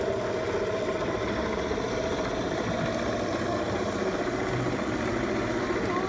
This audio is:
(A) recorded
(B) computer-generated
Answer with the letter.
A